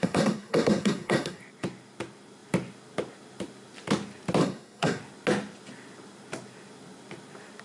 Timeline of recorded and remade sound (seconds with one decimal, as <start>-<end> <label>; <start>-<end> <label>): 0.0-1.4 remade; 1.4-4.4 recorded; 4.4-5.0 remade; 5.0-7.6 recorded